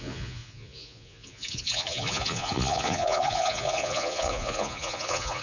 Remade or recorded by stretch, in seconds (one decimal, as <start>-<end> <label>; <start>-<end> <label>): 0.0-5.4 remade